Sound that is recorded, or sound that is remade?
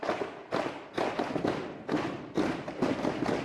recorded